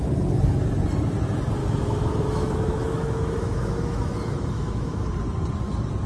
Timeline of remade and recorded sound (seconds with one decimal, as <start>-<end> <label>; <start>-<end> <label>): 0.0-1.6 recorded; 1.6-5.1 remade; 5.1-6.1 recorded